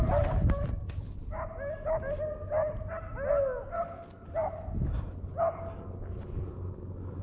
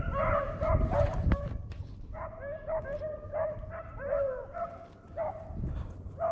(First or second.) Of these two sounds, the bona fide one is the first